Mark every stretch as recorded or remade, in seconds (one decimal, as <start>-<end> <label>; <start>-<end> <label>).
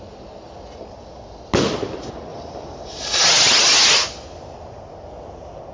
0.0-2.3 recorded; 2.3-3.2 remade; 3.2-5.7 recorded